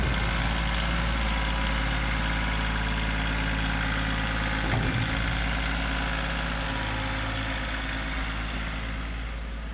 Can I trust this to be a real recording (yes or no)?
yes